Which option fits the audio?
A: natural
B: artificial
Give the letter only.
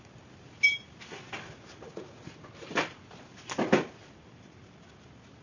A